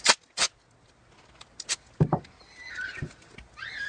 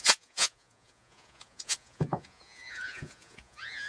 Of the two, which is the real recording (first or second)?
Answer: first